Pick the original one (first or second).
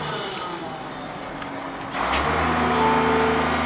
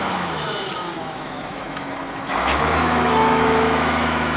first